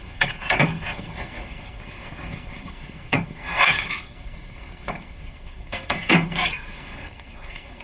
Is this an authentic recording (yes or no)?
no